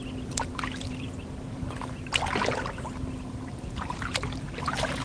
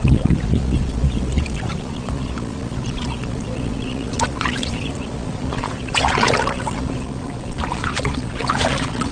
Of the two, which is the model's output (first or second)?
second